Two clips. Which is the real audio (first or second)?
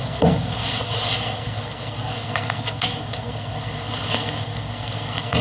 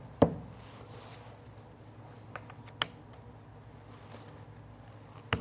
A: second